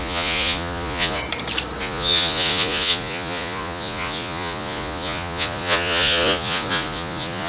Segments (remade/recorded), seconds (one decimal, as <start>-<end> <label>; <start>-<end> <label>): 0.0-1.2 remade; 1.2-1.8 recorded; 1.8-7.5 remade